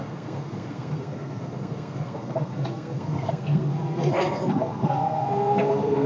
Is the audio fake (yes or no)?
yes